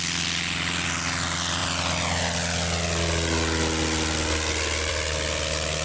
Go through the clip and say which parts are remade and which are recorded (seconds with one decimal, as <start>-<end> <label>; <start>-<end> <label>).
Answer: 0.0-5.8 recorded

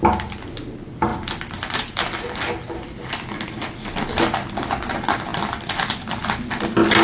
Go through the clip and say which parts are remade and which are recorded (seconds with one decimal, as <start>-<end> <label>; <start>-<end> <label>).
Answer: 0.0-1.1 recorded; 1.1-3.1 remade; 3.1-5.3 recorded; 5.3-6.6 remade; 6.6-7.0 recorded

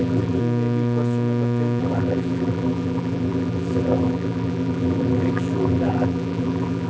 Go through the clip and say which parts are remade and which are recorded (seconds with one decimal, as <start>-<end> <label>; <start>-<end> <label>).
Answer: 0.0-0.4 remade; 0.4-1.8 recorded; 1.8-6.9 remade

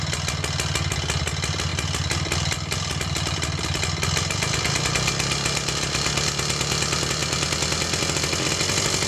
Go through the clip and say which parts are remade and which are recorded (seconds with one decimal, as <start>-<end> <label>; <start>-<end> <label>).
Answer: 0.0-1.7 recorded; 1.7-3.8 remade; 3.8-9.1 recorded

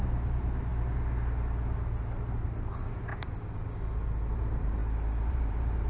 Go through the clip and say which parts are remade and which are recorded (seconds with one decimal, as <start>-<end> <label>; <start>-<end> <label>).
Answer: 0.0-0.7 remade; 0.7-2.7 recorded; 2.7-3.1 remade; 3.1-4.3 recorded; 4.3-4.8 remade; 4.8-5.3 recorded; 5.3-5.9 remade

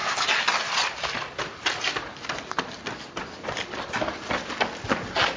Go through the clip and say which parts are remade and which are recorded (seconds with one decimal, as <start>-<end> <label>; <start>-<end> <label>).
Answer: 0.0-5.4 recorded

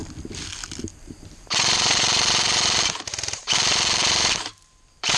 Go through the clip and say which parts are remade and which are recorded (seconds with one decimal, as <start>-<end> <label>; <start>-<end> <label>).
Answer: 0.0-1.0 recorded; 1.0-5.2 remade

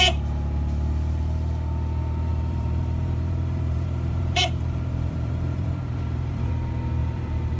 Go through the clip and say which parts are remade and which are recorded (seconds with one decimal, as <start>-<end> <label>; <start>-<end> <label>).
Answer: 0.0-2.3 recorded; 2.3-6.5 remade; 6.5-7.0 recorded; 7.0-7.6 remade